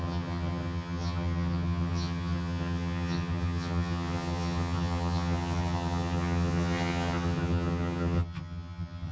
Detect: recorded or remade remade